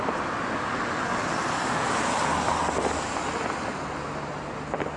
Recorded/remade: recorded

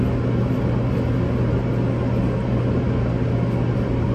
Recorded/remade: recorded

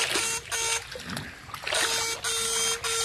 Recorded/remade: recorded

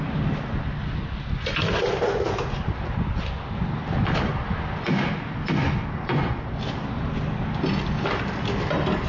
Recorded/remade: recorded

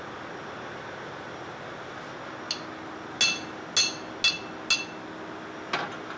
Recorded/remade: recorded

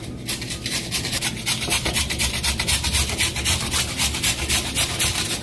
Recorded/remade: recorded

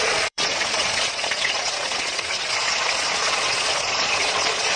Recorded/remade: remade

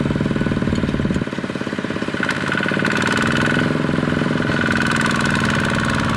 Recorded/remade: recorded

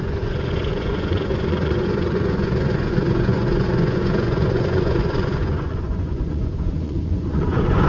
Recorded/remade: remade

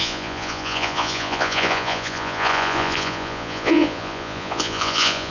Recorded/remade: remade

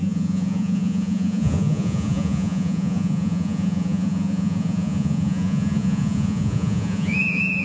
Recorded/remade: remade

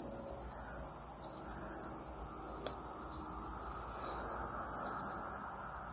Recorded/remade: recorded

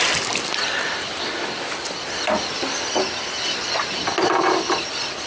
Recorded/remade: recorded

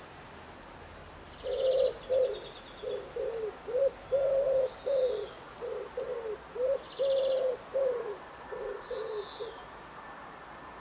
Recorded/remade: recorded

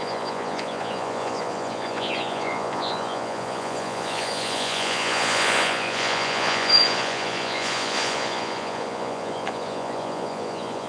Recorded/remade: remade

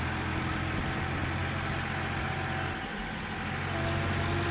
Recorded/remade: recorded